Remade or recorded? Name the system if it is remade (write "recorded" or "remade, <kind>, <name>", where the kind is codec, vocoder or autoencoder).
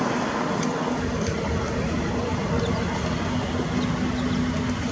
remade, vocoder, BigVGAN v2